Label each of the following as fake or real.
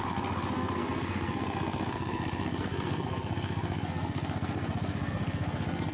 fake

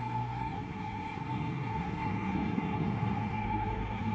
fake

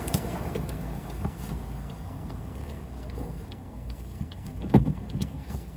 fake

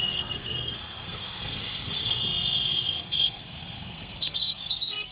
fake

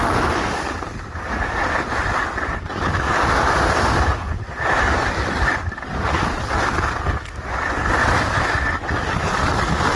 real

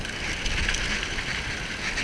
real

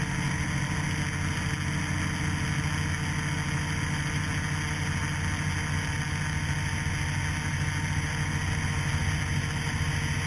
real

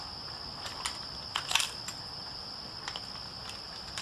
real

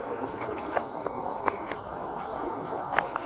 fake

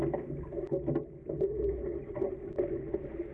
real